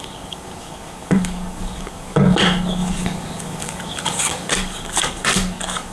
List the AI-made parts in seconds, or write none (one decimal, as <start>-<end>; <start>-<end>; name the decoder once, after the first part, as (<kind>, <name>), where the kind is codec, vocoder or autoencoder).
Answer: 0.0-5.9 (codec, DAC)